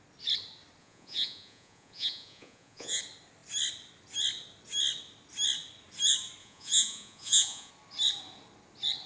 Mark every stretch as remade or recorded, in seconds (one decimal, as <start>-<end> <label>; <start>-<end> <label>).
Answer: 0.0-0.8 recorded; 0.8-3.0 remade; 3.0-6.4 recorded; 6.4-7.7 remade; 7.7-9.1 recorded

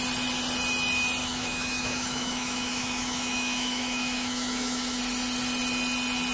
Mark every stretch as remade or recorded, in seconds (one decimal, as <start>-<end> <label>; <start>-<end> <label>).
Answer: 0.0-1.2 recorded; 1.2-5.0 remade; 5.0-6.3 recorded

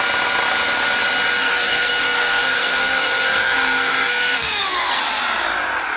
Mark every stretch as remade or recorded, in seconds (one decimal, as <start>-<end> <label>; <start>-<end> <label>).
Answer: 0.0-1.4 recorded; 1.4-5.0 remade; 5.0-6.0 recorded

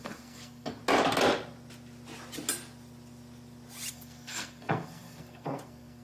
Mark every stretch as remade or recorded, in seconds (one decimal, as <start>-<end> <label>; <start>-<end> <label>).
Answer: 0.0-0.8 remade; 0.8-3.9 recorded; 3.9-6.0 remade

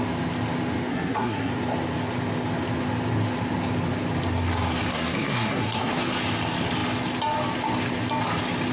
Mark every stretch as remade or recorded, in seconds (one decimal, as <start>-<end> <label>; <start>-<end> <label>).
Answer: 0.0-0.9 recorded; 0.9-1.5 remade; 1.5-4.9 recorded; 4.9-5.9 remade; 5.9-8.7 recorded

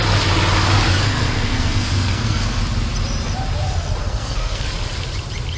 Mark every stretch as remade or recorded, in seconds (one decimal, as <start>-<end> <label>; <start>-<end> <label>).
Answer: 0.0-0.9 recorded; 0.9-2.6 remade; 2.6-4.0 recorded; 4.0-4.7 remade; 4.7-5.6 recorded

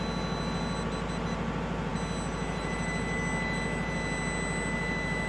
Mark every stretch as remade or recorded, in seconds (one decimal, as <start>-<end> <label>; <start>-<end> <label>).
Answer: 0.0-5.3 recorded

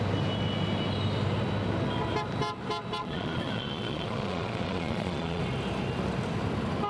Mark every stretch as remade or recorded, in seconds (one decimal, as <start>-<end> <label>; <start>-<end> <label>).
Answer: 0.0-3.0 recorded; 3.0-5.4 remade; 5.4-6.9 recorded